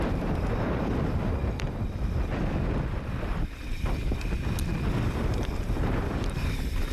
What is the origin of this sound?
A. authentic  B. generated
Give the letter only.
A